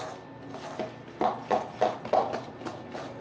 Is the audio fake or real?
real